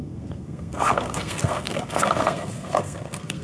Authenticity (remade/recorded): remade